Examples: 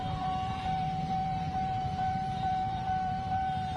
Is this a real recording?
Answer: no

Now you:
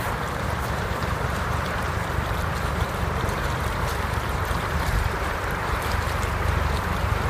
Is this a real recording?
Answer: no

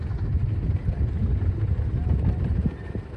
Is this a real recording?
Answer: yes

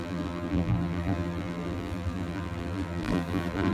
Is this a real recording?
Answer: no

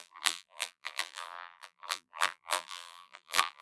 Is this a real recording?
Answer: no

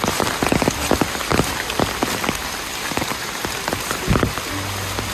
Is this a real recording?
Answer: yes